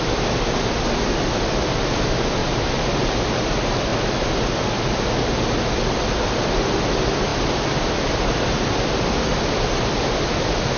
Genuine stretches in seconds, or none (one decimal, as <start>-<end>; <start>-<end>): 0.0-2.4; 2.9-10.8